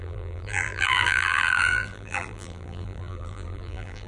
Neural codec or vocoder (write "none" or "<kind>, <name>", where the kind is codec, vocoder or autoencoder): vocoder, BigVGAN v2